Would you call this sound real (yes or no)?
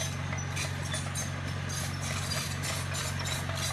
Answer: yes